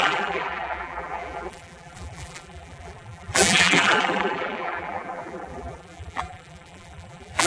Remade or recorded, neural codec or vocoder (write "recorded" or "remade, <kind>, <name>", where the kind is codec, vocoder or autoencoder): remade, vocoder, BigVGAN v2